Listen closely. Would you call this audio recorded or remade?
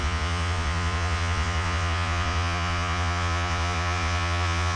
remade